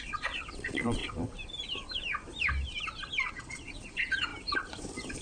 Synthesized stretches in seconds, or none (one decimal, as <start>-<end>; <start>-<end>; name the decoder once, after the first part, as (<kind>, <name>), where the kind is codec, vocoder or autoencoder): 0.0-1.0 (vocoder, Vocos); 3.3-4.3